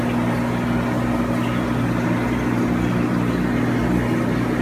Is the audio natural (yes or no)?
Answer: yes